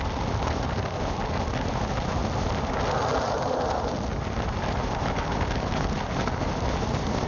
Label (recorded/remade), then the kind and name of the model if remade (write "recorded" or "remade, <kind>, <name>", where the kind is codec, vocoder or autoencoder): recorded